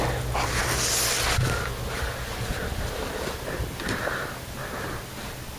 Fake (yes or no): no